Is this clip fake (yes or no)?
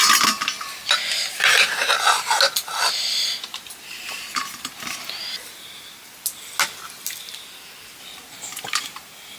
no